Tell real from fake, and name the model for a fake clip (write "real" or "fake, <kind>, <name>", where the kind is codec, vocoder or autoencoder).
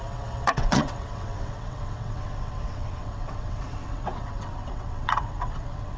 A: fake, vocoder, WaveNeXt